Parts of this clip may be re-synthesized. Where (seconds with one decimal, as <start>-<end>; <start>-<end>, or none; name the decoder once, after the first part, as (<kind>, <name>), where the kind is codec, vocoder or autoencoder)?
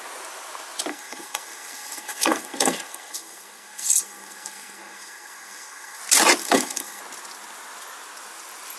0.9-6.0 (codec, SNAC); 6.4-7.0